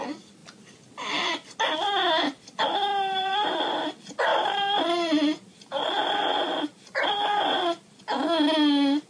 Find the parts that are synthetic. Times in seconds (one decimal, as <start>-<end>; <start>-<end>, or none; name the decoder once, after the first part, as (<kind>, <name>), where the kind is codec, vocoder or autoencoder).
2.9-3.8 (vocoder, BigVGAN v2); 4.3-7.6